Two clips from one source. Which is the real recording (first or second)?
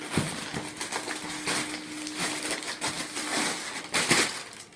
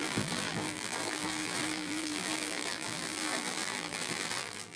first